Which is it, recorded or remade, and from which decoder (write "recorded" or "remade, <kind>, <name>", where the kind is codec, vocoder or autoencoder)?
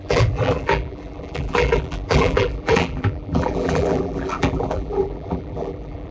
remade, vocoder, BigVGAN v2